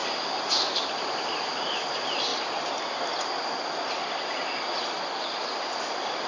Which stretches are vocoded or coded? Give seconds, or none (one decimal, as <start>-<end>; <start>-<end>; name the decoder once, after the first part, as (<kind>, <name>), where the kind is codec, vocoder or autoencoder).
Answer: 0.0-2.3 (vocoder, BigVGAN v2); 5.2-6.3